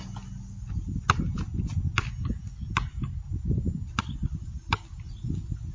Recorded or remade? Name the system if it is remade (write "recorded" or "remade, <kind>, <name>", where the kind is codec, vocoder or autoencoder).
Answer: recorded